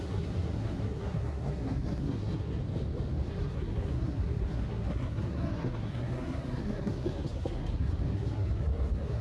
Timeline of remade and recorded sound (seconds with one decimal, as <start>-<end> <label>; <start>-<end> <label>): 0.0-2.6 remade; 2.6-3.3 recorded; 3.3-9.2 remade